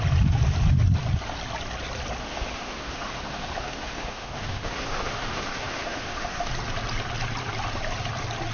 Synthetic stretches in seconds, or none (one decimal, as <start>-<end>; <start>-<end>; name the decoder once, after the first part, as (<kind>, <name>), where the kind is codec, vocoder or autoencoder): 2.2-6.5 (autoencoder, DAC-VAE)